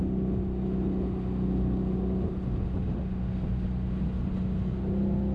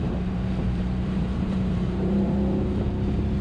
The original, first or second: first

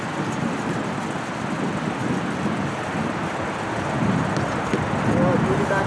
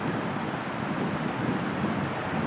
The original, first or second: first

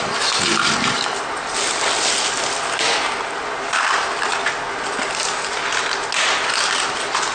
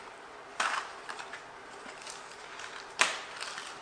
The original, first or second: first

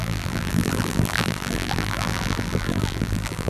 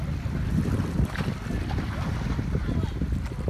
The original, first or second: second